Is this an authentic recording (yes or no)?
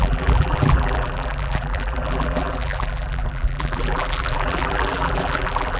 no